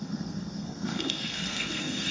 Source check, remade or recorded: remade